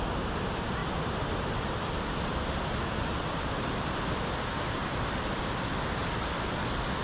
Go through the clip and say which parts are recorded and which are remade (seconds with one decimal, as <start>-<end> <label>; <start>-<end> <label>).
0.0-0.8 recorded; 0.8-3.5 remade; 3.5-4.8 recorded; 4.8-5.4 remade; 5.4-7.0 recorded

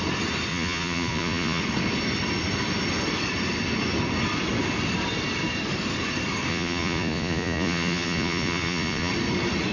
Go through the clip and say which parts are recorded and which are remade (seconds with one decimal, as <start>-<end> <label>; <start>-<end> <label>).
0.0-0.5 recorded; 0.5-1.6 remade; 1.6-6.5 recorded; 6.5-9.1 remade; 9.1-9.7 recorded

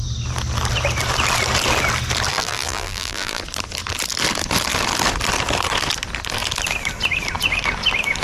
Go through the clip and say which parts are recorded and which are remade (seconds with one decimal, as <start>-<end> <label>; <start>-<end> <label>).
0.0-2.3 recorded; 2.3-3.4 remade; 3.4-8.2 recorded

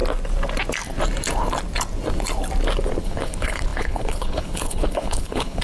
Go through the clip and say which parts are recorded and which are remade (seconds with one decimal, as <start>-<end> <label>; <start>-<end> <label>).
0.0-3.0 recorded; 3.0-5.6 remade

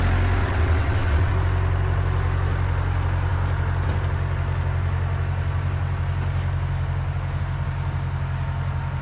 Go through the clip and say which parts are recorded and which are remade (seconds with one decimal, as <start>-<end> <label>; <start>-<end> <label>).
0.0-0.4 recorded; 0.4-1.3 remade; 1.3-9.0 recorded